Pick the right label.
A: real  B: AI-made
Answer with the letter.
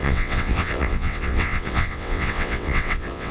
B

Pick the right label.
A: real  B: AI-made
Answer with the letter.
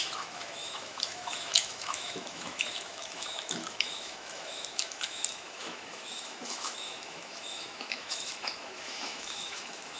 B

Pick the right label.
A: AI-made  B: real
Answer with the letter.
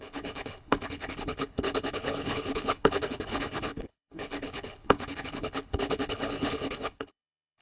A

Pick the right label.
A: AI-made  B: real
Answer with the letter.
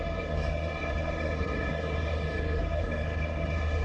A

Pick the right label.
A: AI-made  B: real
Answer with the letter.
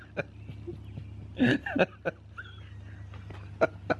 B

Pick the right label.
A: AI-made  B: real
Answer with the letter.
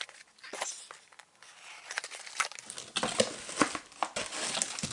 B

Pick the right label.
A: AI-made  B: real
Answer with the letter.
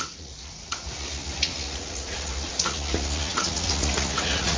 A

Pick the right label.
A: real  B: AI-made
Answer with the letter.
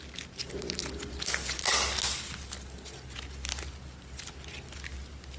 A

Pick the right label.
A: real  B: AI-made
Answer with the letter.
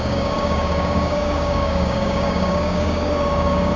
B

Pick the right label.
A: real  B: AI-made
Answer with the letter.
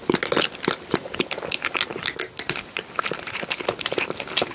A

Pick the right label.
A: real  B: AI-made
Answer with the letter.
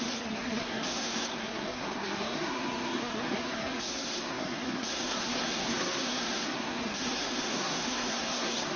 B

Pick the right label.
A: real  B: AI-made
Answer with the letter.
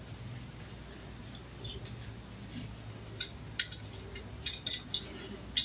A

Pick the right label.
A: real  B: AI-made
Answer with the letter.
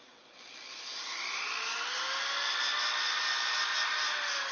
A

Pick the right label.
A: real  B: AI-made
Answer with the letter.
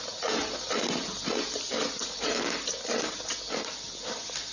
A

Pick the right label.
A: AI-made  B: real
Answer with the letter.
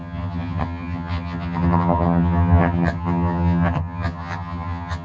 A